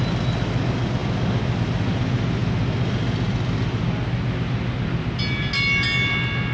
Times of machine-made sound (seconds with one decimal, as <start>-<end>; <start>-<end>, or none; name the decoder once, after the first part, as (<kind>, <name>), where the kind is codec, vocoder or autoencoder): none